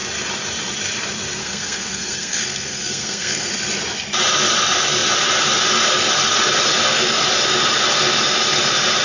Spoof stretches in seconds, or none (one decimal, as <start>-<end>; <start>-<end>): 1.4-3.5